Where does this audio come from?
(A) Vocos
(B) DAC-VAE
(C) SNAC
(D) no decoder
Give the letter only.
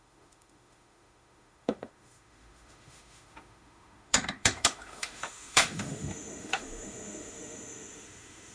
B